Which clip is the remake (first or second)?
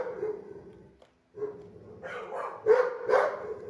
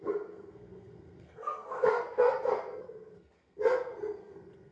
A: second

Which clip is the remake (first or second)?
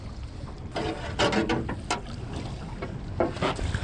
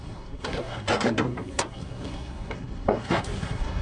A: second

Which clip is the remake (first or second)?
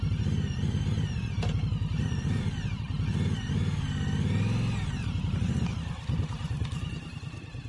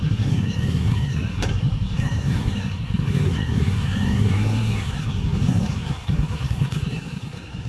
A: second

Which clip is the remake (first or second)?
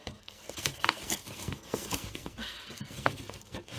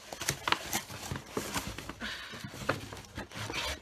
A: first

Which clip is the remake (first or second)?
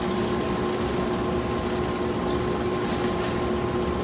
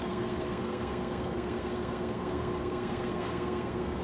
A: second